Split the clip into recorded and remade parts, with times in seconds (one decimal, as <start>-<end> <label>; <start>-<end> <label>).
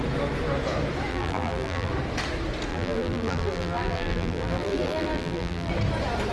0.0-1.1 recorded; 1.1-1.9 remade; 1.9-2.7 recorded; 2.7-5.7 remade; 5.7-6.3 recorded